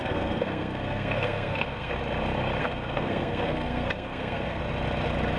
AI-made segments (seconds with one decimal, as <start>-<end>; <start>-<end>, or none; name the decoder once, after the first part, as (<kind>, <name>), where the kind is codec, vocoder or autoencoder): 0.0-1.9 (codec, SNAC); 2.6-4.6